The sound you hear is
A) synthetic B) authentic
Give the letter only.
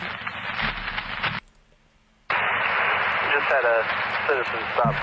B